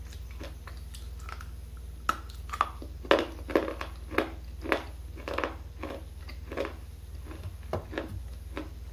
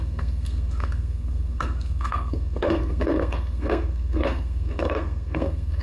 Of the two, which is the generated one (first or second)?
second